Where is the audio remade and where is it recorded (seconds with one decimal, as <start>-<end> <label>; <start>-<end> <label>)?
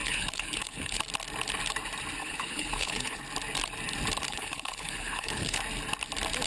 0.0-1.0 remade; 1.0-2.2 recorded; 2.2-3.2 remade; 3.2-4.3 recorded; 4.3-5.6 remade; 5.6-6.5 recorded